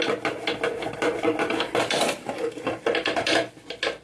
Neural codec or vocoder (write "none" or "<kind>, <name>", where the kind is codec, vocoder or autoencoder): none